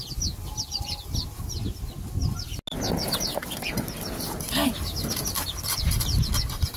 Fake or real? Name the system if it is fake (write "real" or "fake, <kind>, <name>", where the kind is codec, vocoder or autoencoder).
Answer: real